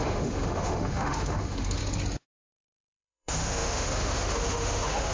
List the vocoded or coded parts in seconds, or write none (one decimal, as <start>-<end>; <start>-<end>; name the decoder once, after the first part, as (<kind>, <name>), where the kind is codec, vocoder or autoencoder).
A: 0.0-1.8 (autoencoder, DAC-VAE); 2.5-5.1